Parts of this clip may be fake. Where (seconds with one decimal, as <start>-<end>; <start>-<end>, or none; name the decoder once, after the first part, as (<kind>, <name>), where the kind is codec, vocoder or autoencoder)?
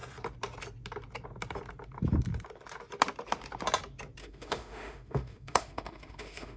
4.2-6.6 (autoencoder, DAC-VAE)